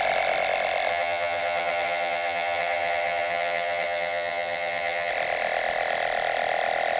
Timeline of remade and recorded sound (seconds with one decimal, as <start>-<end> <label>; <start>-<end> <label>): 0.0-0.9 recorded; 0.9-5.1 remade; 5.1-7.0 recorded